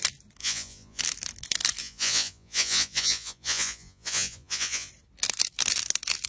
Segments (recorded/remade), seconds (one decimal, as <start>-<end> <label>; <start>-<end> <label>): 0.0-0.4 recorded; 0.4-1.0 remade; 1.0-1.8 recorded; 1.8-4.9 remade; 4.9-6.3 recorded